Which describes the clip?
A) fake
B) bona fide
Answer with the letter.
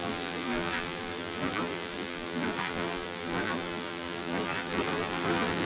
A